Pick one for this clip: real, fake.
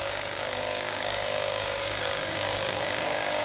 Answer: fake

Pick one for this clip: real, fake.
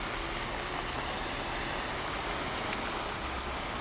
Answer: real